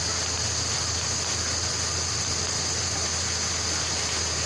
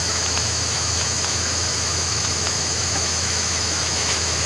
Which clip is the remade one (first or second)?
second